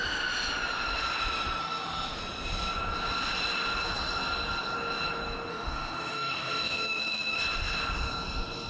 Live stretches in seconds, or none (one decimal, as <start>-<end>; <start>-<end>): 0.0-1.6; 2.2-5.5; 7.4-8.7